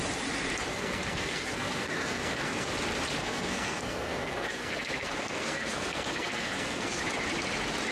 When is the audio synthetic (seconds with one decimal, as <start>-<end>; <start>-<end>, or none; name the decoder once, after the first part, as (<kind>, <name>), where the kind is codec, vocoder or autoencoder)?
0.7-2.7 (codec, SNAC); 3.2-7.0